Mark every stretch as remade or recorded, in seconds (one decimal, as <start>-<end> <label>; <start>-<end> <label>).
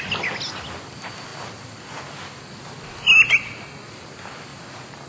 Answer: 0.0-5.1 recorded